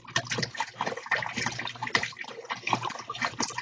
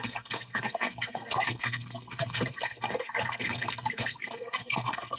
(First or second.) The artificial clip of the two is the second